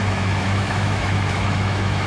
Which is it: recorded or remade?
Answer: remade